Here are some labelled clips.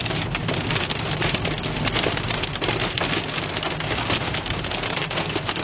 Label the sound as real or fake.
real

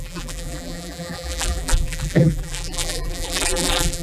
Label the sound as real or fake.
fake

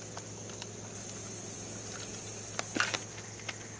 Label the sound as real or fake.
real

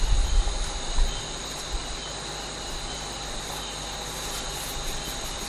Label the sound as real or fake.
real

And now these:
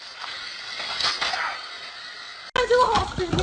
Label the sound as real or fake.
real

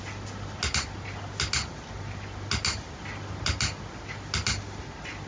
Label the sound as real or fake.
real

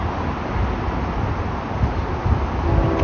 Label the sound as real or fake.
real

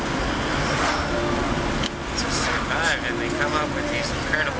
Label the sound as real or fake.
real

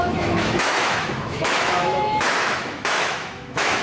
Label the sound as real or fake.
fake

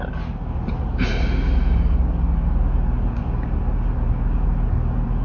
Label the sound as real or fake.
real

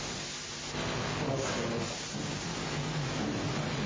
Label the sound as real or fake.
real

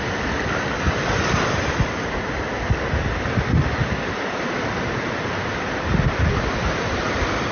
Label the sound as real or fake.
real